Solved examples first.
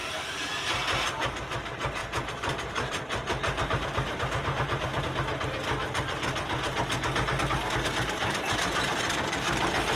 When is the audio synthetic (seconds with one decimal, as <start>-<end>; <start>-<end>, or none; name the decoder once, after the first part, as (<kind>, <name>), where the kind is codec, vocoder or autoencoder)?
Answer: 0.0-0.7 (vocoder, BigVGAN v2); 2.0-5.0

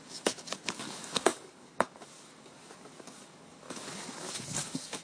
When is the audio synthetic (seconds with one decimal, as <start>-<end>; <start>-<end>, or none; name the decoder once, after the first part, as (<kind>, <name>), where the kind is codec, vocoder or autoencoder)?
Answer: 0.0-5.0 (codec, DAC)

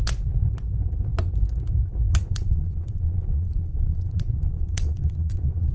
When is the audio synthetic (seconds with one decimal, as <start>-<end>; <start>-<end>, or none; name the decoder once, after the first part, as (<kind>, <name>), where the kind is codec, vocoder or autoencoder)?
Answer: 2.1-5.7 (vocoder, Vocos)

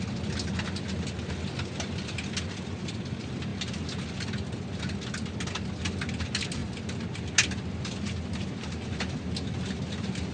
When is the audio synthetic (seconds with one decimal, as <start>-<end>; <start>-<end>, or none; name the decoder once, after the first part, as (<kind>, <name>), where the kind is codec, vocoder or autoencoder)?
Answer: none

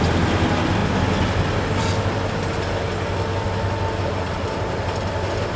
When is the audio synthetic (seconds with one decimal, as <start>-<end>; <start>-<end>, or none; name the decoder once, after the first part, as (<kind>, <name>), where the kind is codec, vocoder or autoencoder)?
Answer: none